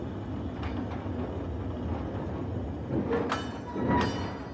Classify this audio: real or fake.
real